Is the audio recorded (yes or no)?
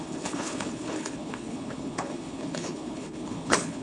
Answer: no